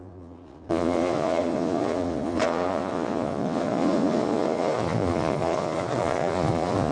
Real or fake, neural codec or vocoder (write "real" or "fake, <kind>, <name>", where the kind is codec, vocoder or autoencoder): fake, vocoder, Vocos